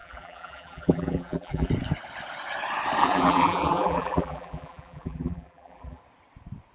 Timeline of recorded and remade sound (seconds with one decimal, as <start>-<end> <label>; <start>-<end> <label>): 0.0-1.7 remade; 1.7-3.0 recorded; 3.0-6.0 remade; 6.0-6.7 recorded